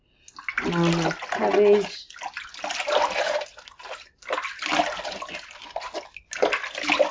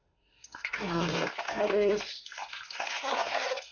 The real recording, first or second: first